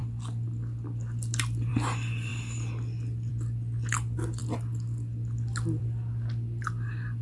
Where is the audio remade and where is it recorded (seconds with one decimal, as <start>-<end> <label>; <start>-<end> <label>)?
0.0-7.2 recorded